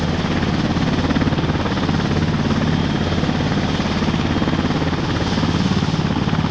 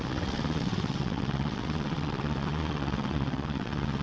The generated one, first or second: second